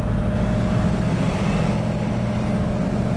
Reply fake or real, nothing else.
real